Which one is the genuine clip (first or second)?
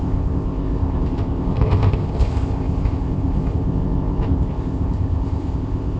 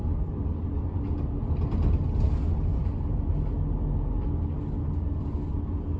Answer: second